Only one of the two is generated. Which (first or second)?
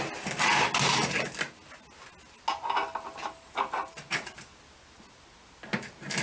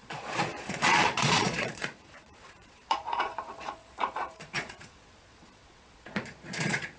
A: second